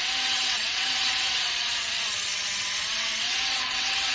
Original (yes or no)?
no